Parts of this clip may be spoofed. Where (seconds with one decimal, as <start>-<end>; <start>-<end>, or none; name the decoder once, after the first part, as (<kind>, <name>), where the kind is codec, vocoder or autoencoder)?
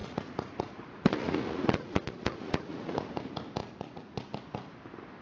0.0-3.1 (vocoder, Vocos); 3.6-4.3